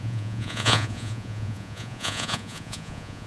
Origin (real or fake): fake